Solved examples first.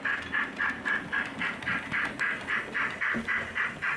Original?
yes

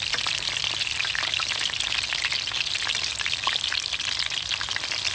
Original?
yes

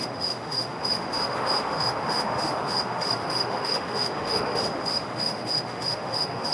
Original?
no